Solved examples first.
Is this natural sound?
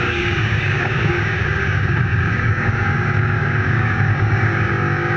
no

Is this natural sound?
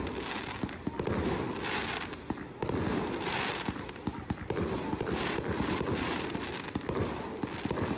no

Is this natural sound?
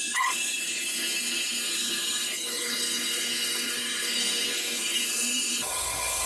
no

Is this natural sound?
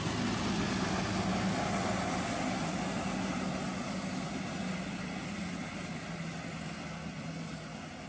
yes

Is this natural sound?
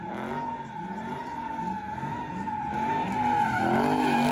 yes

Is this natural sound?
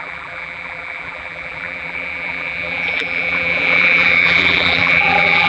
no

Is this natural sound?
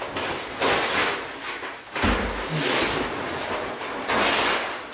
yes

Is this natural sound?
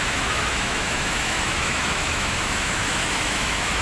no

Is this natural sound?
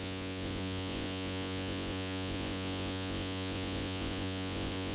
no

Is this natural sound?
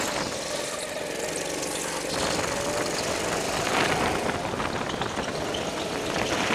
yes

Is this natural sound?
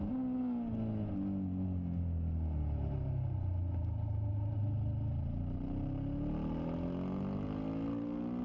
yes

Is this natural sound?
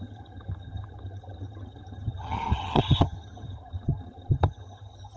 no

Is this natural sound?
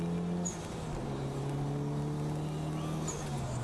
yes